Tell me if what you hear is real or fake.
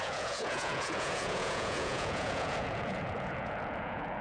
fake